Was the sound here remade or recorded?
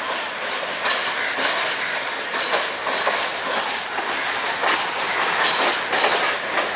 recorded